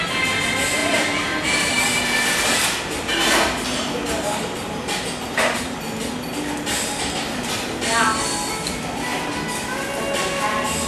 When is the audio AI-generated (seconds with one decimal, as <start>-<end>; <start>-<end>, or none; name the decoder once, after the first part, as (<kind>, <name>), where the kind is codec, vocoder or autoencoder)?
0.8-5.8 (vocoder, BigVGAN v2)